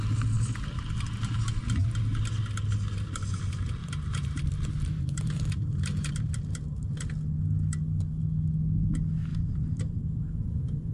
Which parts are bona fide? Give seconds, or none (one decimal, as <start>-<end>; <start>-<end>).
0.0-3.8; 6.1-9.3; 10.0-10.9